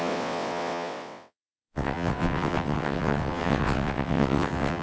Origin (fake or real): fake